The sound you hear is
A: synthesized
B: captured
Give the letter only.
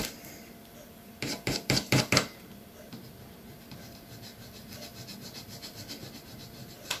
A